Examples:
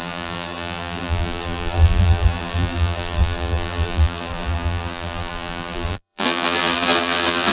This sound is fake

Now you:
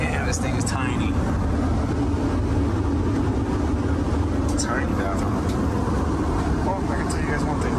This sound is real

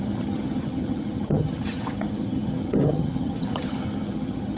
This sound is fake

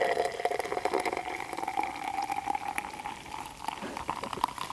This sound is real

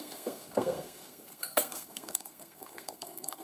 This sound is fake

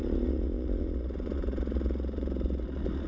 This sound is fake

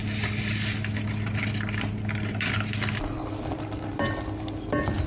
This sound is real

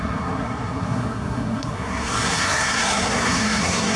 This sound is fake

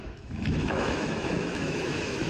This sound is fake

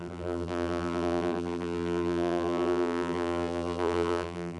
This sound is fake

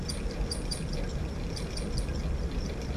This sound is real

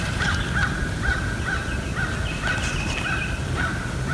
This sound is real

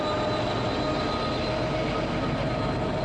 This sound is real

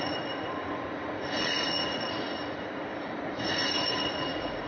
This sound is fake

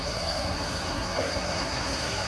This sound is fake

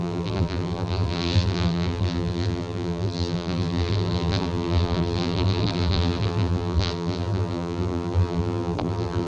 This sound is fake